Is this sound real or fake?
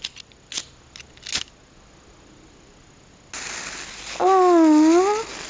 real